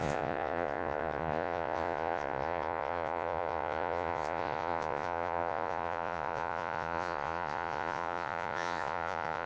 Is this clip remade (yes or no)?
yes